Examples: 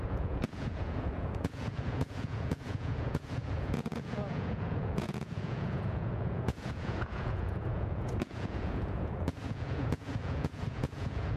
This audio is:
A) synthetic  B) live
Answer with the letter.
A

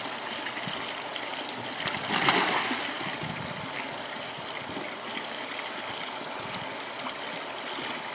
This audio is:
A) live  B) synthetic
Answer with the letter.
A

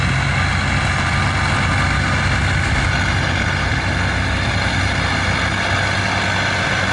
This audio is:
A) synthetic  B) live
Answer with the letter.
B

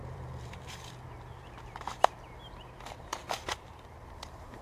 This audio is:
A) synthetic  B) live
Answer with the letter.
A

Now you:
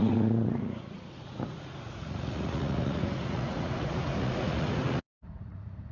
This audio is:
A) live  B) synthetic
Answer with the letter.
B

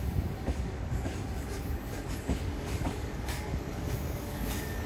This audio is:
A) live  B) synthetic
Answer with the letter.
B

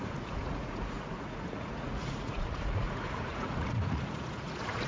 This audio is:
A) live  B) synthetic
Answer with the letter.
B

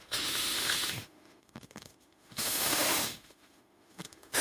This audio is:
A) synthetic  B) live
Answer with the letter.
A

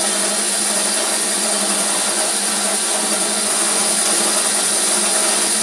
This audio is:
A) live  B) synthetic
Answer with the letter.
B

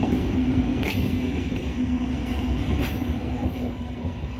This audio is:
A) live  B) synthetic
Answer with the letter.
B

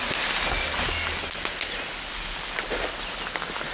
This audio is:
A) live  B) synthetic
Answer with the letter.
A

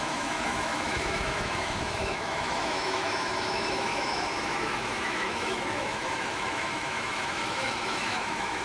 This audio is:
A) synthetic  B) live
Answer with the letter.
A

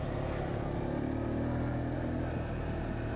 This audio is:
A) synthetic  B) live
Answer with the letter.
B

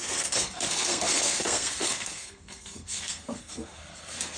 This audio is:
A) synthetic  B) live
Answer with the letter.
A